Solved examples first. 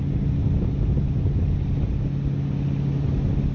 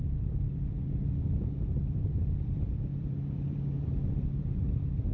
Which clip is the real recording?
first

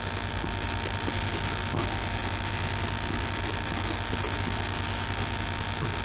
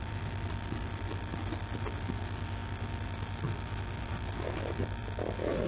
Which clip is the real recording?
first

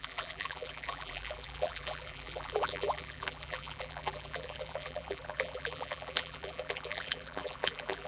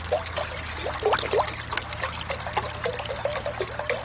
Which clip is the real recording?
second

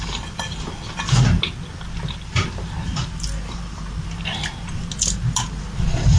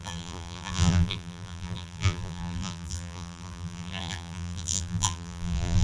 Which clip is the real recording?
first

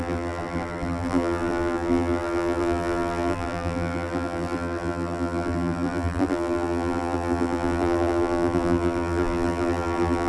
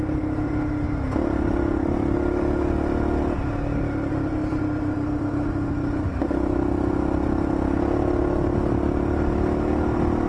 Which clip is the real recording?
second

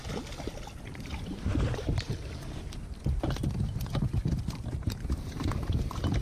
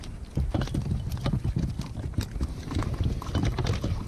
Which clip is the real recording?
second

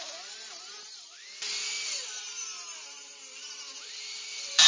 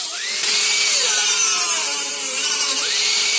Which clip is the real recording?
first